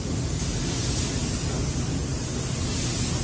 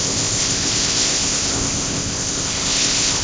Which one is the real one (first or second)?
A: first